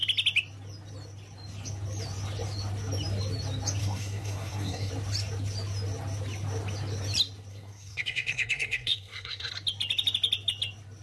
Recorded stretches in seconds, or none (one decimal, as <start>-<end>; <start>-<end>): 0.0-3.8; 4.9-7.5; 9.5-11.0